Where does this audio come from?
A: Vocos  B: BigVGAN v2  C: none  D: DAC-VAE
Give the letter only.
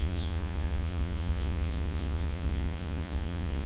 A